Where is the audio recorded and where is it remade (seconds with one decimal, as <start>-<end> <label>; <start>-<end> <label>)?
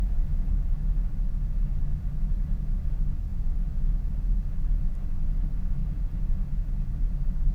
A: 0.0-0.5 remade; 0.5-1.9 recorded; 1.9-2.7 remade; 2.7-3.3 recorded; 3.3-4.1 remade; 4.1-5.8 recorded; 5.8-6.9 remade; 6.9-7.5 recorded